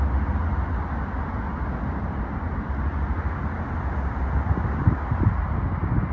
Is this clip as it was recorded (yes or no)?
yes